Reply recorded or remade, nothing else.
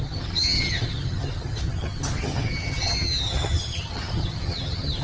remade